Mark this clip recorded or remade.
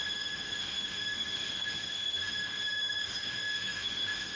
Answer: remade